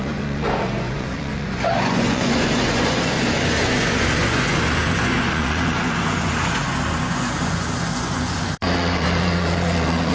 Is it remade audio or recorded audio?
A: remade